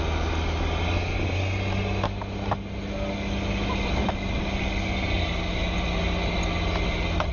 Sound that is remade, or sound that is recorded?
recorded